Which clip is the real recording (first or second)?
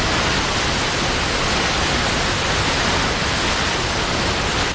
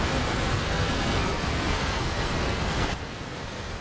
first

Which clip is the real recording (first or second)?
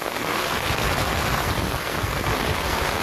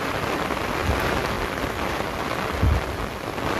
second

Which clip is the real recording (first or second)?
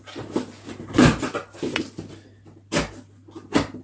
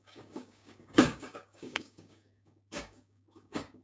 first